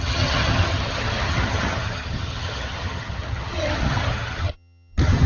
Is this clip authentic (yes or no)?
no